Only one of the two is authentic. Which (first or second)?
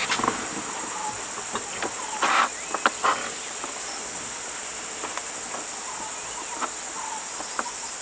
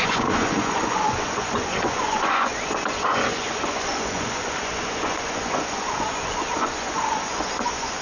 first